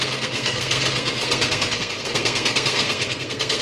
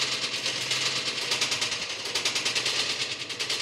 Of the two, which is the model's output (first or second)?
first